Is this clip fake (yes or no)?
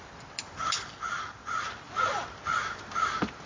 no